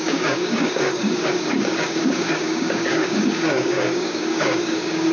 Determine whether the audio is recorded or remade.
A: remade